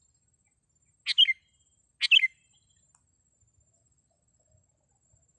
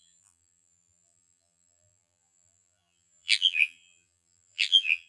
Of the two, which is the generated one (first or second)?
second